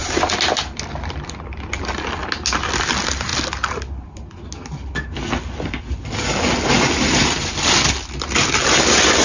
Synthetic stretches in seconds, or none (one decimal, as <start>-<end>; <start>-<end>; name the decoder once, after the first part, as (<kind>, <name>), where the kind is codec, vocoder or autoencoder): none